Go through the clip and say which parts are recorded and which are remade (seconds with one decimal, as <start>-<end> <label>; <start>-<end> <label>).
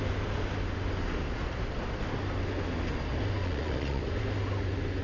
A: 0.0-3.4 recorded; 3.4-4.0 remade; 4.0-5.0 recorded